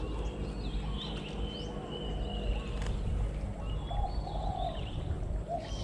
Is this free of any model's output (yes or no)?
yes